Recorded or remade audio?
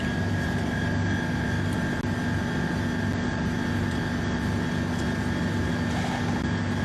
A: recorded